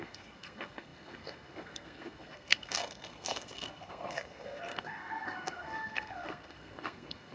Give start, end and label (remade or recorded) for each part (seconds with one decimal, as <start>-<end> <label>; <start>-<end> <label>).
0.0-7.3 remade